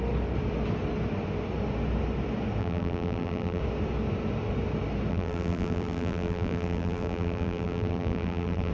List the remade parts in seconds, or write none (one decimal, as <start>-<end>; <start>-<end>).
2.6-3.6; 5.1-8.7